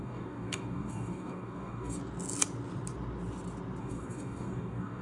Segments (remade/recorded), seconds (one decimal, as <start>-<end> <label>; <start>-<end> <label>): 0.0-2.0 remade; 2.0-3.8 recorded; 3.8-5.0 remade